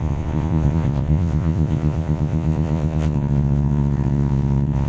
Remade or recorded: remade